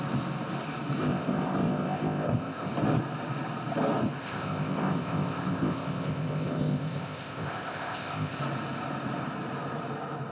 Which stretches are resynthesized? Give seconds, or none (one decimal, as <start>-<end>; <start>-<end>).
1.0-2.7; 4.2-8.4